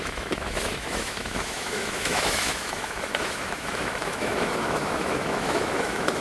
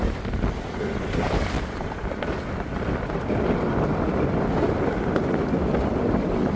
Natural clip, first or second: second